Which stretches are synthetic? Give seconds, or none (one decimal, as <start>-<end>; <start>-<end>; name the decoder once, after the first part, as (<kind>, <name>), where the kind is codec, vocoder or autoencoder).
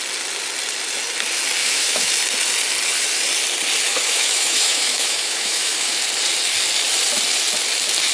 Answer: 1.6-2.1 (autoencoder, DAC-VAE); 3.9-6.0